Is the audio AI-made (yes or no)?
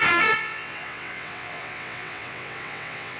yes